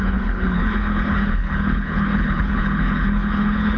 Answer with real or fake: fake